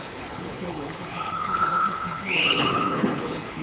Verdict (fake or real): fake